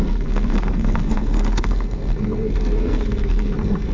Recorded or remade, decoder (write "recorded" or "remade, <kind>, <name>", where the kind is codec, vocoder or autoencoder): remade, codec, SNAC